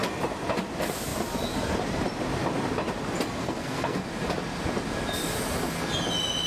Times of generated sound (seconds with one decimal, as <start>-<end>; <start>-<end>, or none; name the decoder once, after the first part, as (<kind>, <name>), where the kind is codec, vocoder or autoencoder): 3.4-4.0 (codec, SNAC)